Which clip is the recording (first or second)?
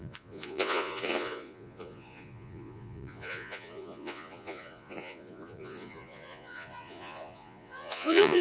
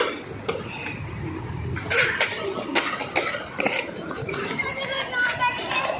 second